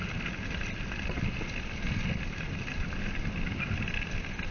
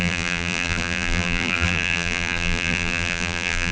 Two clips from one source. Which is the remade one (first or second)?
second